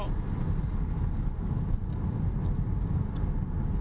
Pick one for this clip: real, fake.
real